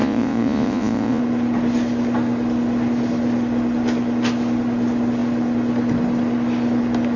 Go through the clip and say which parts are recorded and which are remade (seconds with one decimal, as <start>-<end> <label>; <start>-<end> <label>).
0.0-1.2 remade; 1.2-7.2 recorded